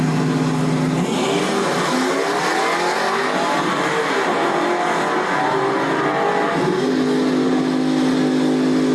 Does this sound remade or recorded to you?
recorded